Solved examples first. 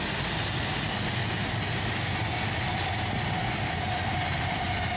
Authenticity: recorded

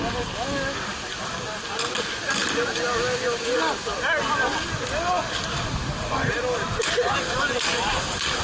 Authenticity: recorded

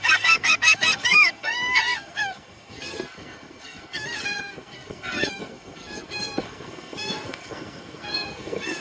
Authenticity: remade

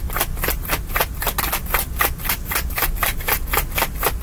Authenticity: recorded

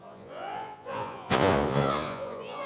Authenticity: remade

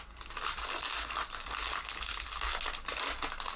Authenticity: recorded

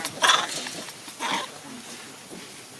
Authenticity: recorded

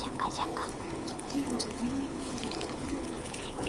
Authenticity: remade